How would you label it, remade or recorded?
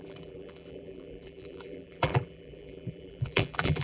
remade